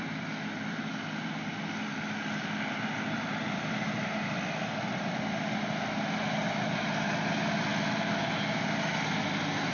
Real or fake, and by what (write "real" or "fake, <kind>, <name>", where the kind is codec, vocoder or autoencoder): real